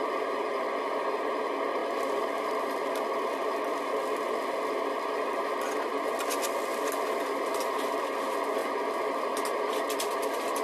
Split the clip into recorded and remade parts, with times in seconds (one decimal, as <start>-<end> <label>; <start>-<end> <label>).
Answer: 0.0-10.6 recorded